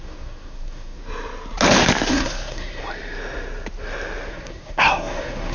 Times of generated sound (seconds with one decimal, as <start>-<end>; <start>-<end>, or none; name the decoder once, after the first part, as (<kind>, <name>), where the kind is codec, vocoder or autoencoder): 0.0-1.0 (codec, SNAC); 2.1-2.8; 4.3-5.5